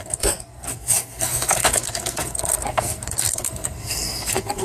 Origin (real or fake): fake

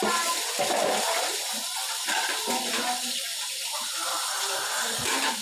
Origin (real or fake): real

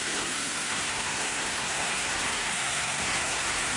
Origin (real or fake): fake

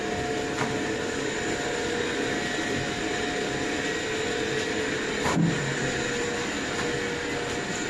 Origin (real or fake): real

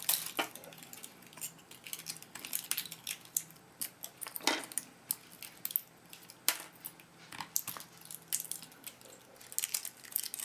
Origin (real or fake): real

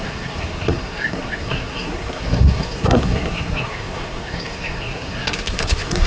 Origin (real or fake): fake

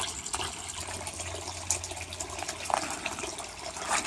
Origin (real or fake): real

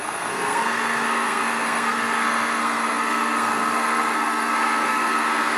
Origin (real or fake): fake